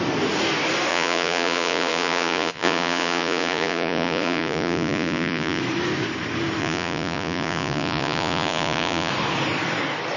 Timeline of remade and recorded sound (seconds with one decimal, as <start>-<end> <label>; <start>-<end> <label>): 0.0-0.9 recorded; 0.9-5.6 remade; 5.6-6.6 recorded; 6.6-9.1 remade; 9.1-10.2 recorded